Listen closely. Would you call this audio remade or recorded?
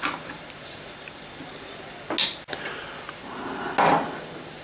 recorded